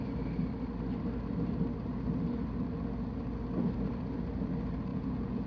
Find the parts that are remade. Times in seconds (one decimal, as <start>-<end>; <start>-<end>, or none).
4.9-5.5